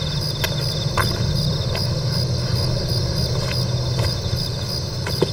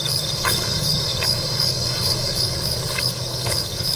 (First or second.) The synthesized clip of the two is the second